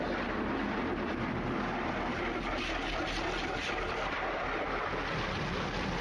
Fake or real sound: real